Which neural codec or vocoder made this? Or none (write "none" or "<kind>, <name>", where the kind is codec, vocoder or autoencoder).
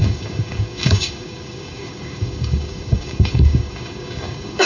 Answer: codec, DAC